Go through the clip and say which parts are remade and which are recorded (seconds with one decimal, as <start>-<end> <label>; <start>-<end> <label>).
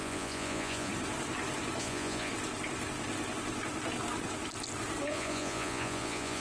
0.0-0.9 remade; 0.9-1.8 recorded; 1.8-2.3 remade; 2.3-5.1 recorded; 5.1-6.4 remade